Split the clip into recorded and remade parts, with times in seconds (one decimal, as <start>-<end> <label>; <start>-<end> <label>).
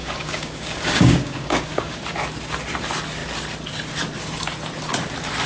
0.0-2.0 remade; 2.0-5.5 recorded